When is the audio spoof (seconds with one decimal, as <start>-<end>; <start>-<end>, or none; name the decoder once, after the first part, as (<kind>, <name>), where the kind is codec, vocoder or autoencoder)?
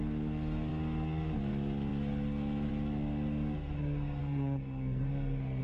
4.2-5.6 (codec, SNAC)